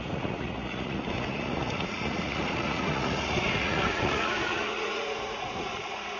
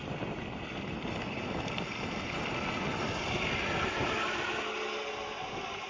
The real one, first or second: second